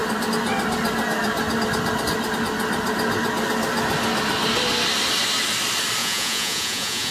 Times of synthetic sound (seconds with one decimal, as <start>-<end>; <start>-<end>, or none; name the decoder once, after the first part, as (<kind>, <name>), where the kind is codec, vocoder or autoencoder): 6.0-7.1 (vocoder, Vocos)